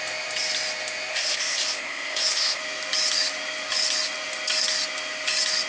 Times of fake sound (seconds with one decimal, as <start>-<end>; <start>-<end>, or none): 1.1-2.6